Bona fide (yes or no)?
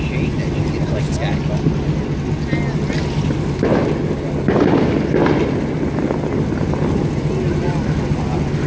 yes